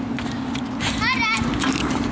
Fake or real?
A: real